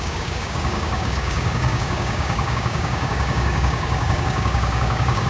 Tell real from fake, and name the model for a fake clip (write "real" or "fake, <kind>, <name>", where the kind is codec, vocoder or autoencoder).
fake, codec, DAC